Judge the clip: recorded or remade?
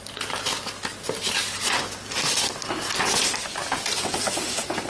recorded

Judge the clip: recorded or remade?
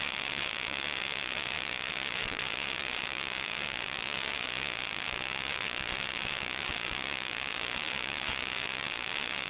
remade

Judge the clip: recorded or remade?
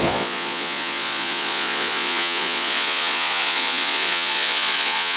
remade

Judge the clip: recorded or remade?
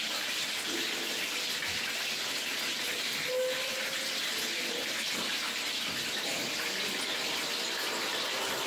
recorded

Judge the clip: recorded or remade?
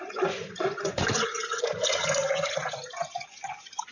remade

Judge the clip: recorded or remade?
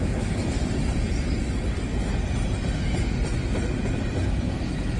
recorded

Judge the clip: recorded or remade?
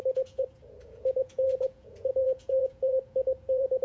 remade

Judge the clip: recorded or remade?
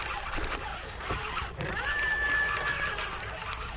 recorded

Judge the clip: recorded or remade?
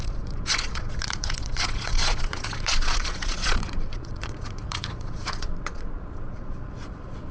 remade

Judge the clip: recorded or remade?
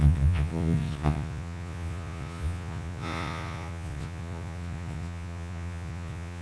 remade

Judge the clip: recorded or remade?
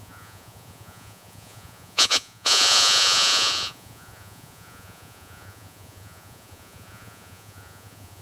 remade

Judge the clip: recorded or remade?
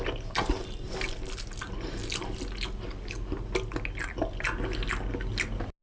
recorded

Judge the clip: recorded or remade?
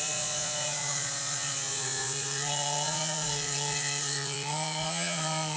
remade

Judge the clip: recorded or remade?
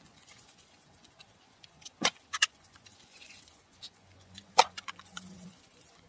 remade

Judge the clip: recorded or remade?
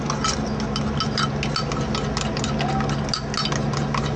recorded